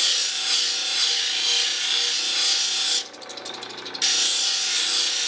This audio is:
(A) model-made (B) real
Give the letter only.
B